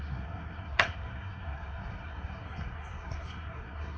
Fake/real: fake